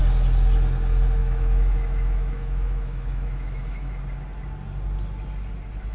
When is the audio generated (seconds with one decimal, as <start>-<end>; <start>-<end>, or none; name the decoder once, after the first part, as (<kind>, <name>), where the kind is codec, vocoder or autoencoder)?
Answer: 1.2-4.0 (autoencoder, DAC-VAE)